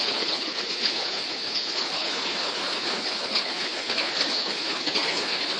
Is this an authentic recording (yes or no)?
no